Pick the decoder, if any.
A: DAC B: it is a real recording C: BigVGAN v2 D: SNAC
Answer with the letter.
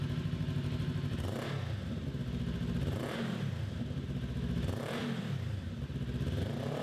B